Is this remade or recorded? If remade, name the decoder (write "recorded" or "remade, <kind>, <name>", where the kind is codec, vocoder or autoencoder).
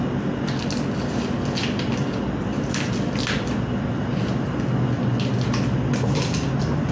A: recorded